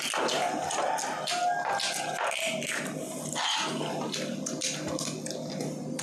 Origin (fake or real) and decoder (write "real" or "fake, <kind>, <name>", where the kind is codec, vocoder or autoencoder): real